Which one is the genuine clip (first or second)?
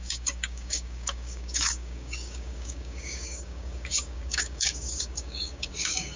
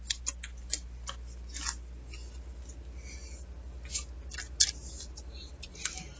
second